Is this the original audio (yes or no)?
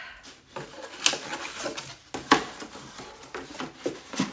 yes